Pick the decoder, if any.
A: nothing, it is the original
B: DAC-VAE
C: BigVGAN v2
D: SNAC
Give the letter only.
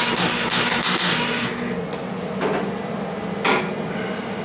A